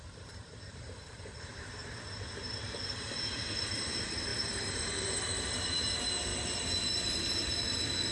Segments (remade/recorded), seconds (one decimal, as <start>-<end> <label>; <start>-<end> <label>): 0.0-8.1 remade